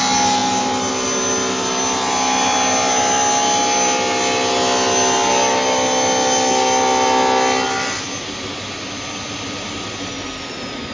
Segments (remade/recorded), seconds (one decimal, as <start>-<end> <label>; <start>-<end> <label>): 0.0-10.9 recorded